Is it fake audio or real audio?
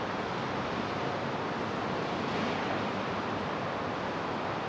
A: real